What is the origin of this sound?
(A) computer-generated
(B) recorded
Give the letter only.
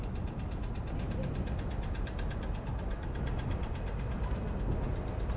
B